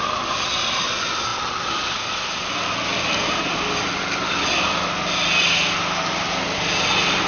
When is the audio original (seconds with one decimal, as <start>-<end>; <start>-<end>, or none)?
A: 0.0-1.3; 1.9-7.3